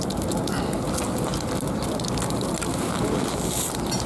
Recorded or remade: recorded